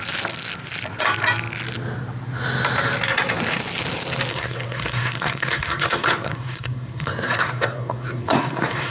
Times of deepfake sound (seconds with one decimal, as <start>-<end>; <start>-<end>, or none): 4.3-8.9